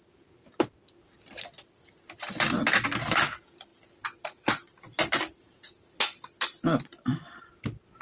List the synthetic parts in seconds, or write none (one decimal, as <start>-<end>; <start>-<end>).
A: none